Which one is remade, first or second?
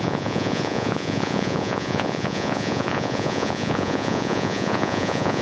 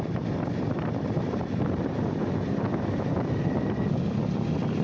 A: first